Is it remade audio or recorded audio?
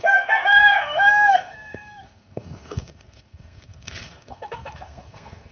remade